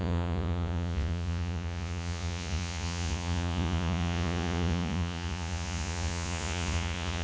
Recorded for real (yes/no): no